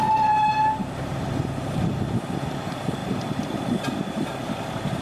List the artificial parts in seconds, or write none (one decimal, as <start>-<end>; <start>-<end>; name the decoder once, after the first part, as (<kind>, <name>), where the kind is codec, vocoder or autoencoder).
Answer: 0.8-1.7 (vocoder, BigVGAN v2); 3.0-5.0